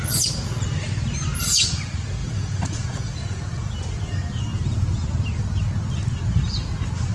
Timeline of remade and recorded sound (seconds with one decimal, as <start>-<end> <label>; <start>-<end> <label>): 0.0-2.2 recorded; 2.2-3.7 remade; 3.7-7.1 recorded